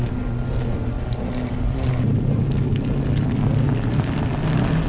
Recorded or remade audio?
recorded